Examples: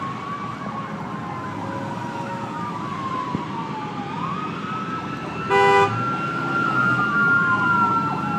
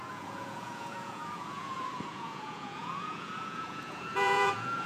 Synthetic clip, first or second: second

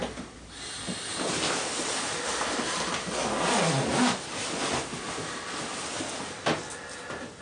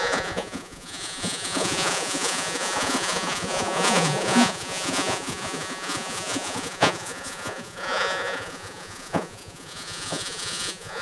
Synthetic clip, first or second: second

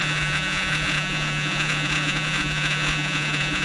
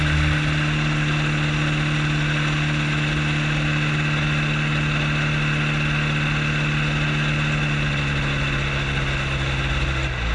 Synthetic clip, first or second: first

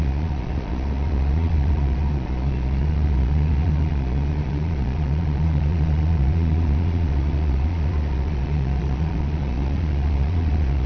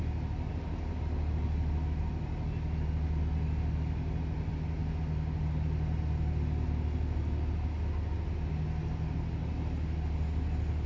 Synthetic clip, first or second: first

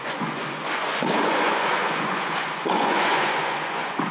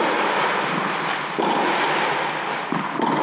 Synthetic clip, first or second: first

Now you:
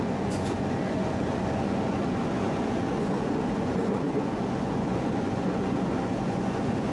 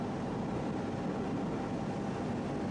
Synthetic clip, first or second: first